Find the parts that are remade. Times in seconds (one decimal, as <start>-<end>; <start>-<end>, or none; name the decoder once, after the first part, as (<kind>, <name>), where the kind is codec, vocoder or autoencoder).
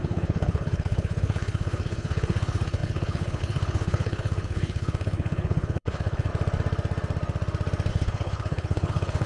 0.0-6.3 (codec, HILCodec); 7.9-9.3